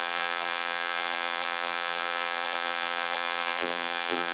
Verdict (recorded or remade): remade